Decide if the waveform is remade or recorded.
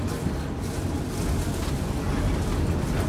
recorded